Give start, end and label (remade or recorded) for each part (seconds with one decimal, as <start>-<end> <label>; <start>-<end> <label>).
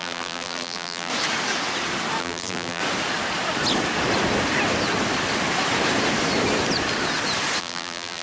0.0-1.1 remade; 1.1-2.2 recorded; 2.2-2.8 remade; 2.8-7.6 recorded; 7.6-8.2 remade